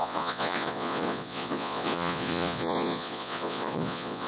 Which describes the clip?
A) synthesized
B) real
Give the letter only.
A